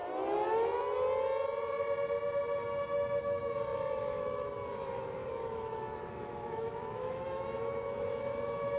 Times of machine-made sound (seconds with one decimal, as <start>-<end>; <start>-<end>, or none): 3.2-8.8